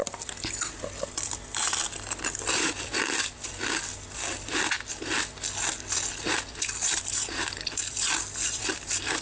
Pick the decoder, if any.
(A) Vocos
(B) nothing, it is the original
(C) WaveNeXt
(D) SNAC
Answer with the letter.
B